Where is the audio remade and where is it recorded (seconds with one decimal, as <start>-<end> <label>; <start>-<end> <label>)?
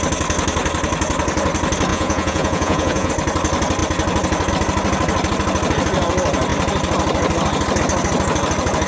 0.0-1.9 recorded; 1.9-3.1 remade; 3.1-8.9 recorded